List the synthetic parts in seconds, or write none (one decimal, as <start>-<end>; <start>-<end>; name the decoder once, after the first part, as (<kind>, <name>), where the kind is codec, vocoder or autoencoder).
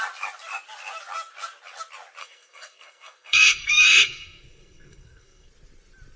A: 2.2-5.5 (codec, SNAC)